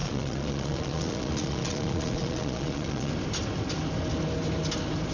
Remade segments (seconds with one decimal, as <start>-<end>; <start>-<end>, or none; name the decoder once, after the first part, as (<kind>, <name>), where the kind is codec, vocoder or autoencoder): 0.0-3.1 (vocoder, Vocos)